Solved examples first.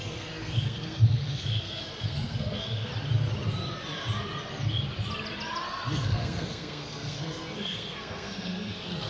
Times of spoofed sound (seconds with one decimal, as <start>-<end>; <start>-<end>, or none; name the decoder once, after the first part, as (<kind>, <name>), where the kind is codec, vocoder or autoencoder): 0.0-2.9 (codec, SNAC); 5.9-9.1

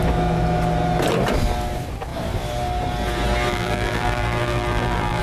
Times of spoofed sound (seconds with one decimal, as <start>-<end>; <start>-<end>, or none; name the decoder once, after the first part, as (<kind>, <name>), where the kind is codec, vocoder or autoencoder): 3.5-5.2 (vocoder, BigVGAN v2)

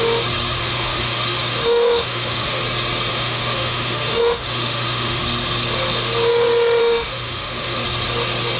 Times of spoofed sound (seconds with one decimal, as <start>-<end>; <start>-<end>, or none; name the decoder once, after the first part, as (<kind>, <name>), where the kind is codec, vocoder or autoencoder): 0.6-2.6 (autoencoder, DAC-VAE); 3.1-5.2; 6.8-7.8